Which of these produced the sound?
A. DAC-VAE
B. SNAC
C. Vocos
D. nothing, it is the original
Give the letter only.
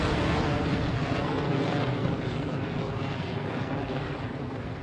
B